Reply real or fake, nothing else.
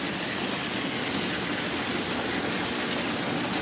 real